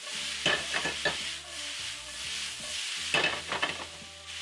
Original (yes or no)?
yes